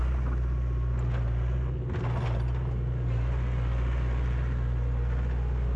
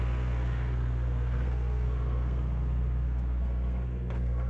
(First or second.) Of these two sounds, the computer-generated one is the second